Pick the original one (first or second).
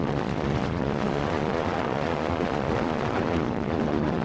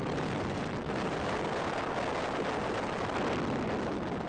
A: second